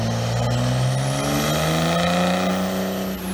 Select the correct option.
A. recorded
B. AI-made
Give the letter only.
A